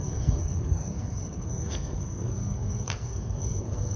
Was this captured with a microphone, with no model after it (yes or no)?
no